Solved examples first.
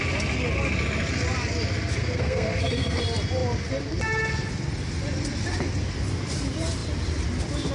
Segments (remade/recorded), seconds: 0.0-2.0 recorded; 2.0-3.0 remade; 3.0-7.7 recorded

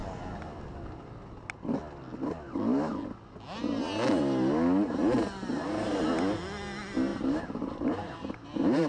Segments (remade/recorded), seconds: 0.0-5.5 recorded; 5.5-6.1 remade; 6.1-7.1 recorded; 7.1-8.9 remade

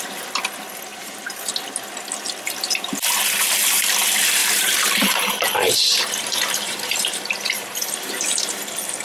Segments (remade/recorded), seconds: 0.0-0.9 recorded; 0.9-1.4 remade; 1.4-4.4 recorded; 4.4-8.6 remade; 8.6-9.0 recorded

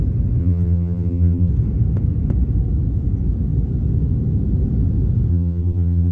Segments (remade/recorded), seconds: 0.0-0.4 recorded; 0.4-1.5 remade; 1.5-5.3 recorded; 5.3-6.1 remade

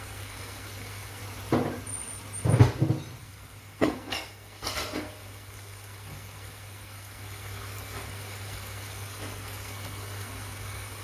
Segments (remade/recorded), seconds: 0.0-1.2 remade; 1.2-3.2 recorded; 3.2-11.0 remade

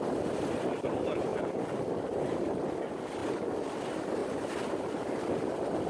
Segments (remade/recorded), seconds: 0.0-1.3 recorded; 1.3-2.4 remade; 2.4-4.2 recorded; 4.2-5.9 remade

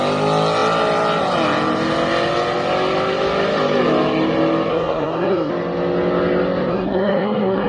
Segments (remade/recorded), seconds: 0.0-4.7 recorded; 4.7-5.5 remade; 5.5-6.7 recorded; 6.7-7.7 remade